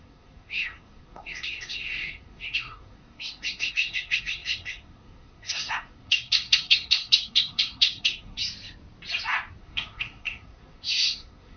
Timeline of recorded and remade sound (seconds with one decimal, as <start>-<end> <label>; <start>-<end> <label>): 0.0-8.4 remade; 8.4-9.6 recorded; 9.6-11.6 remade